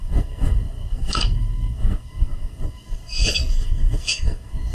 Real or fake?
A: fake